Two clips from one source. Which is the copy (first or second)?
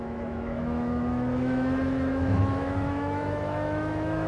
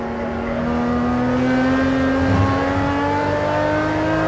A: first